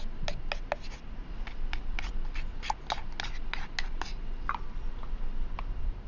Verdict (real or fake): real